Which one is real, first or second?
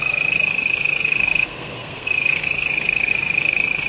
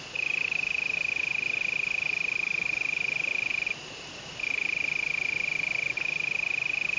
second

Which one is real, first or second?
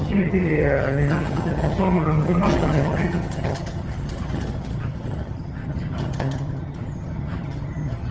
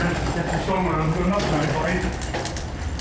second